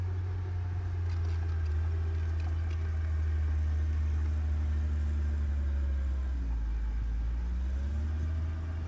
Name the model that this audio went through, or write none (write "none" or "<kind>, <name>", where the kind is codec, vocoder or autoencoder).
none